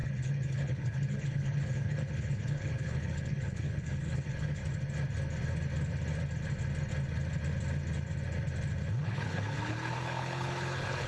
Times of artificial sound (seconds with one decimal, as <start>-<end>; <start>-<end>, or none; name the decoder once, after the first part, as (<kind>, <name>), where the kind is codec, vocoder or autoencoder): 0.0-4.6 (codec, HILCodec); 8.9-11.1